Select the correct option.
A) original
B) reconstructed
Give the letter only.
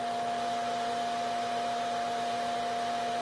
A